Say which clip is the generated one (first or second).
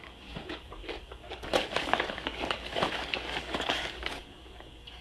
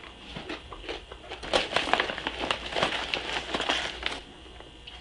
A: first